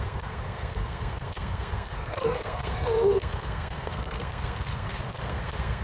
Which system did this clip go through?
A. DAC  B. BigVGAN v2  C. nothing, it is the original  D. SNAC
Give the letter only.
D